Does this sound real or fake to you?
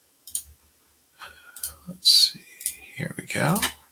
fake